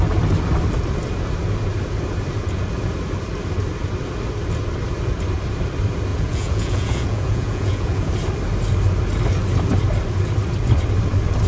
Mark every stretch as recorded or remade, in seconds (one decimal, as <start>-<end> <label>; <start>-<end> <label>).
0.0-6.1 recorded; 6.1-8.1 remade; 8.1-11.5 recorded